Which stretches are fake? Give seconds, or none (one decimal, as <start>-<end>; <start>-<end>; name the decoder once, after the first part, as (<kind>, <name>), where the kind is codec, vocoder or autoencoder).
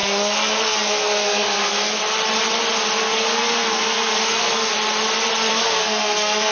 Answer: 0.0-2.0 (codec, SNAC); 3.0-4.7; 5.5-6.5